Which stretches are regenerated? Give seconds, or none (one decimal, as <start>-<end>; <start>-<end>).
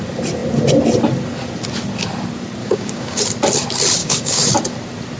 2.6-3.2; 4.0-4.5